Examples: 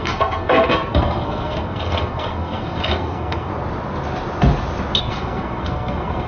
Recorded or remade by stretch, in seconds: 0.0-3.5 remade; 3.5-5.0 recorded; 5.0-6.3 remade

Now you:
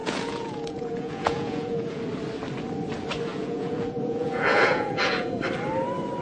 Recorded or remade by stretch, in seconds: 0.0-2.0 remade; 2.0-3.3 recorded; 3.3-5.4 remade; 5.4-6.2 recorded

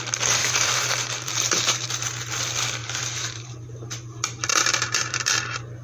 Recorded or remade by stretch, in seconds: 0.0-0.4 recorded; 0.4-1.9 remade; 1.9-2.8 recorded; 2.8-3.5 remade; 3.5-4.5 recorded; 4.5-5.3 remade; 5.3-5.8 recorded